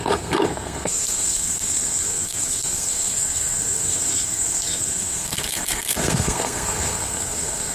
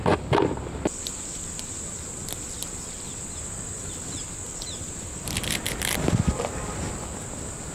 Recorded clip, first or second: second